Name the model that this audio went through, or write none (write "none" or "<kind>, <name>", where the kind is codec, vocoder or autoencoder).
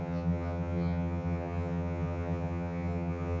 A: vocoder, HiFi-GAN